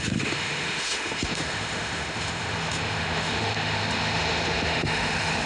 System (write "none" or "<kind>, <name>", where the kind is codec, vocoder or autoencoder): autoencoder, DAC-VAE